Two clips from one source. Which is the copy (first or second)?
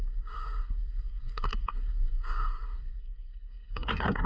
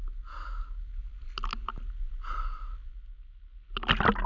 first